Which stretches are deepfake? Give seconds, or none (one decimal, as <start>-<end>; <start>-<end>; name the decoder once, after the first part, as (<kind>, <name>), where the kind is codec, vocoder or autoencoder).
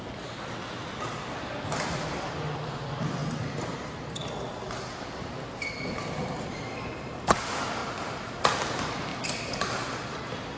none